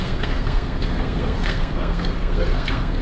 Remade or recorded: remade